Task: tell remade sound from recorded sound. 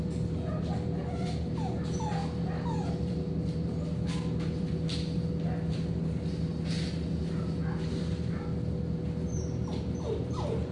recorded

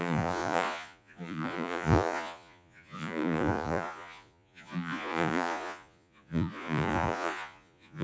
remade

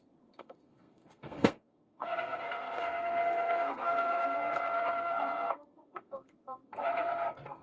remade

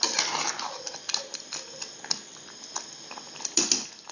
recorded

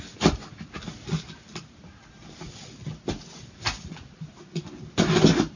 recorded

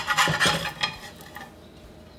recorded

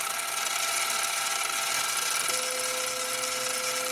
recorded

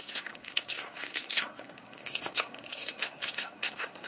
remade